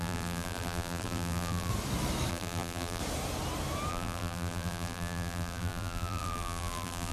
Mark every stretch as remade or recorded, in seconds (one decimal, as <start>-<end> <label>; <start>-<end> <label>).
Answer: 0.0-1.7 remade; 1.7-2.3 recorded; 2.3-3.0 remade; 3.0-3.9 recorded; 3.9-7.1 remade

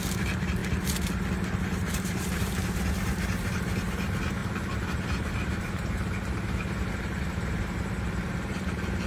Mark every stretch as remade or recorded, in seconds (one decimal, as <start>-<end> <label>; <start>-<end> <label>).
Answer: 0.0-0.6 remade; 0.6-1.6 recorded; 1.6-9.1 remade

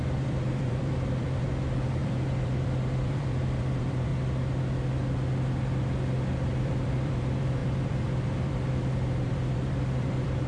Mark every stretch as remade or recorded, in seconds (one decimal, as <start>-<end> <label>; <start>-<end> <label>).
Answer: 0.0-4.1 remade; 4.1-6.6 recorded; 6.6-10.5 remade

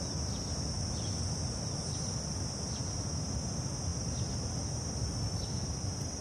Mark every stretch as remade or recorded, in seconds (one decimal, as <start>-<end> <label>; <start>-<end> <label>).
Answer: 0.0-6.2 recorded